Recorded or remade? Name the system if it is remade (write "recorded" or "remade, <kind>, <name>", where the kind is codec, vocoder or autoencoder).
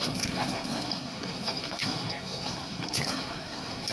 remade, codec, SNAC